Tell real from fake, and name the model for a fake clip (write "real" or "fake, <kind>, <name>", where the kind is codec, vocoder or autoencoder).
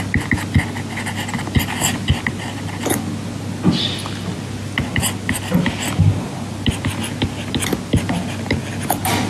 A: real